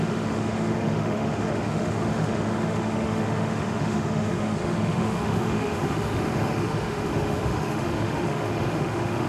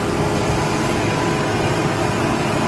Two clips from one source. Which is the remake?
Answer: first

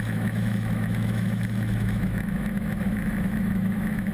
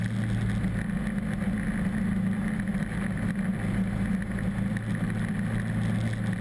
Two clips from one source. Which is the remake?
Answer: first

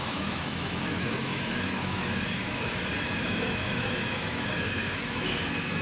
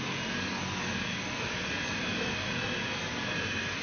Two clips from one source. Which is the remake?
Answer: first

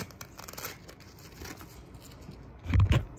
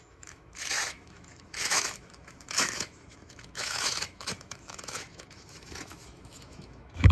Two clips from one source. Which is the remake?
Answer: second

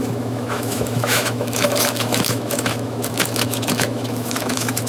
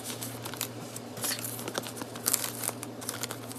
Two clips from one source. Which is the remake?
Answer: first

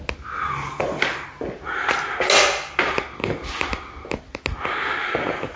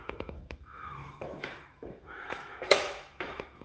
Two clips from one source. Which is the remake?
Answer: second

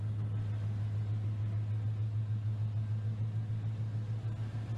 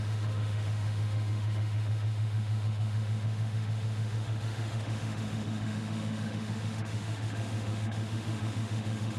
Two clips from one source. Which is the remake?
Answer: second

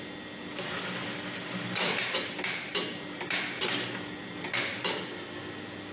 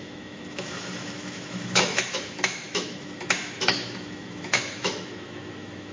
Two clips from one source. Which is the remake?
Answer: second